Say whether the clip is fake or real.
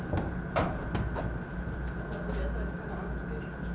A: real